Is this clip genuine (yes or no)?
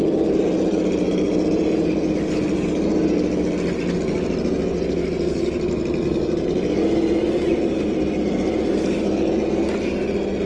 yes